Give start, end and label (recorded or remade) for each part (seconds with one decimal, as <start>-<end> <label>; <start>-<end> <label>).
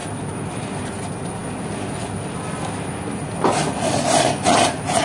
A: 0.0-5.0 recorded